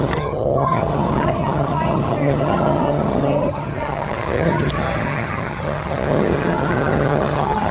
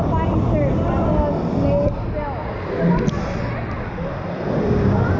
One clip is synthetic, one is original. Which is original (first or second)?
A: second